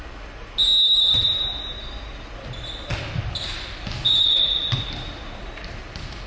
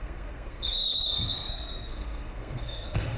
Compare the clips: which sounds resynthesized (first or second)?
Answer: second